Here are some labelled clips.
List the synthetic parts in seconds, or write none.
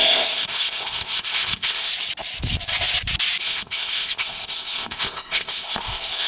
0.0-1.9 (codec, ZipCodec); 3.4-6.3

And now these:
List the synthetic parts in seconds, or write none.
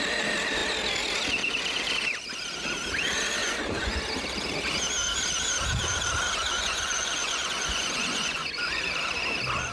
3.4-4.0 (vocoder, Vocos); 6.5-8.8